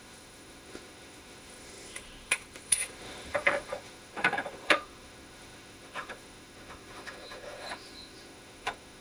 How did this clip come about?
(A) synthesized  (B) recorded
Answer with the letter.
A